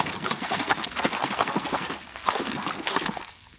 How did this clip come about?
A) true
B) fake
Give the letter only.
B